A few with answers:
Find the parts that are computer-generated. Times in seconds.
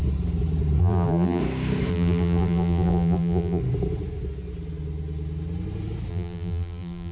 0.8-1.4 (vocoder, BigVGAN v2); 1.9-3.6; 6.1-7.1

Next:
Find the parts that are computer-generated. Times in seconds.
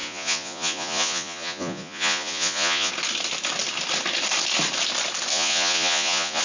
0.0-2.9 (vocoder, Vocos); 5.3-6.4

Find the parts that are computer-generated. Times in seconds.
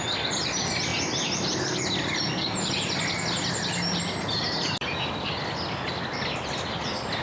none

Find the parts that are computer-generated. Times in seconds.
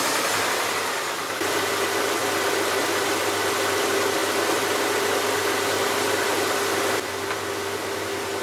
none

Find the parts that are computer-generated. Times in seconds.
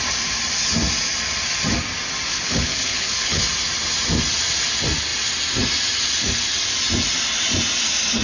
2.3-3.4 (codec, HILCodec)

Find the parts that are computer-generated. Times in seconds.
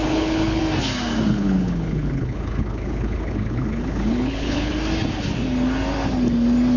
0.0-0.6 (codec, HILCodec); 1.3-4.7